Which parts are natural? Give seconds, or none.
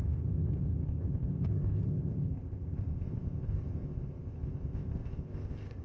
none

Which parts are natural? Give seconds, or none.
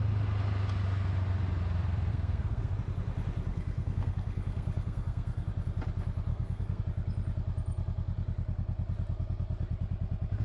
0.0-2.1; 2.7-3.5; 5.5-6.3; 6.8-10.4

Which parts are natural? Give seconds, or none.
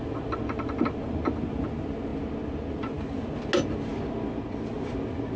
0.0-5.4